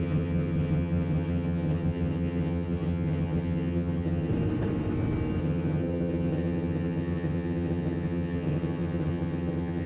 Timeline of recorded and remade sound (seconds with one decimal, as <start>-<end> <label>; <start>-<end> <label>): 0.0-4.3 remade; 4.3-5.4 recorded; 5.4-9.9 remade

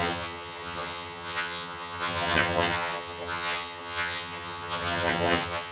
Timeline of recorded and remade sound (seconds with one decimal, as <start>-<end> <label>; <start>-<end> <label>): 0.0-5.7 remade

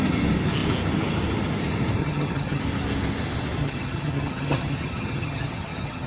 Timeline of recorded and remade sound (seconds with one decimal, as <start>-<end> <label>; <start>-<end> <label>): 0.0-2.0 recorded; 2.0-2.6 remade; 2.6-3.6 recorded; 3.6-6.1 remade

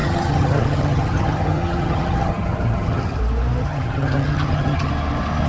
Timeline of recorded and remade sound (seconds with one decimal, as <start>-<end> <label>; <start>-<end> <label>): 0.0-3.2 remade; 3.2-3.6 recorded; 3.6-4.9 remade; 4.9-5.5 recorded

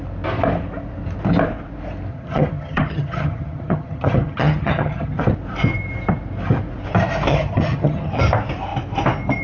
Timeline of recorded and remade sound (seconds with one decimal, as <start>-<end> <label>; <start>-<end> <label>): 0.0-2.1 recorded; 2.1-5.2 remade; 5.2-7.3 recorded; 7.3-8.2 remade; 8.2-9.4 recorded

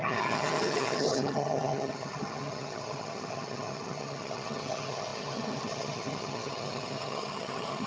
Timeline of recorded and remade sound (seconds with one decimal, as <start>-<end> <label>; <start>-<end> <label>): 0.0-7.9 remade